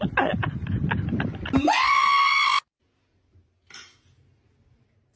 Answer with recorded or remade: recorded